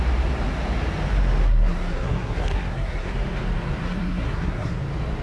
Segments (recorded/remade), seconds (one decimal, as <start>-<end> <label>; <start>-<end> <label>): 0.0-1.4 recorded; 1.4-3.1 remade; 3.1-3.8 recorded; 3.8-4.8 remade; 4.8-5.2 recorded